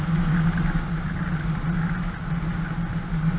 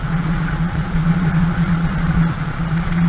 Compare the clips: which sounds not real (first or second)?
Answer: second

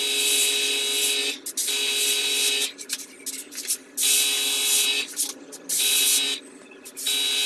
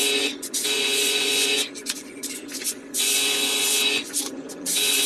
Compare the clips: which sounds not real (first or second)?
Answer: second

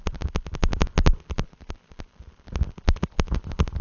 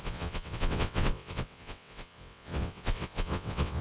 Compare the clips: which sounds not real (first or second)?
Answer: second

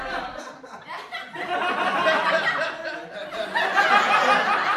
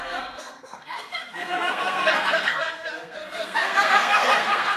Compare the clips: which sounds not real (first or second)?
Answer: second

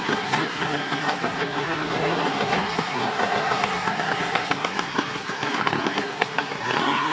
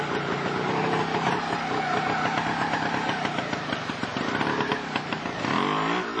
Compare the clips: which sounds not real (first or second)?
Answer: first